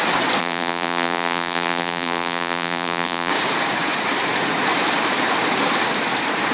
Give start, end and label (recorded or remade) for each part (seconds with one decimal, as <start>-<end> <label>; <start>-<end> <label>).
0.0-0.4 recorded; 0.4-3.3 remade; 3.3-6.5 recorded